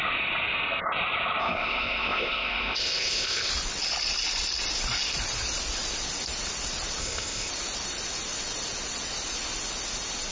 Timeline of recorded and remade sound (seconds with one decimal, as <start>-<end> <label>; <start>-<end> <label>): 0.0-1.4 recorded; 1.4-3.5 remade; 3.5-7.0 recorded; 7.0-7.5 remade; 7.5-10.3 recorded